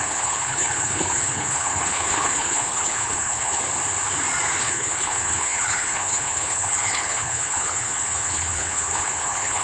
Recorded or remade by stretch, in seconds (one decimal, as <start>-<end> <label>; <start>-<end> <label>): 0.0-3.6 remade; 3.6-4.6 recorded; 4.6-9.6 remade